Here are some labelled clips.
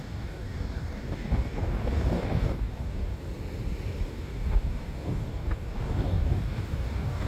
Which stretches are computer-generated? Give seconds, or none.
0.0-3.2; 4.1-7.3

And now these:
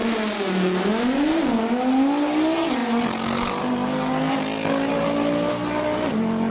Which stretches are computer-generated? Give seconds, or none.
none

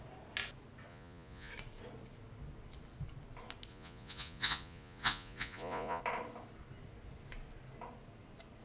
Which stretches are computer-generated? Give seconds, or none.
0.9-1.5; 3.7-6.0